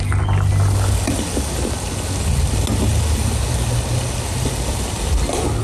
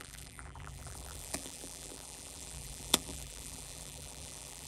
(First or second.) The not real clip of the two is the second